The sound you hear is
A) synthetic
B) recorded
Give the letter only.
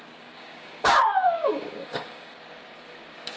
A